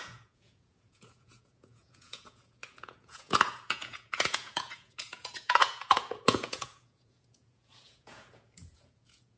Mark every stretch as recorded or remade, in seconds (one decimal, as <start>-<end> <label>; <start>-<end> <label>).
0.0-9.4 remade